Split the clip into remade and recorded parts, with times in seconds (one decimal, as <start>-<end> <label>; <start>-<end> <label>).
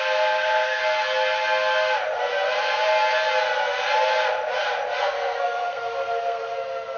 0.0-0.8 remade; 0.8-5.0 recorded; 5.0-7.0 remade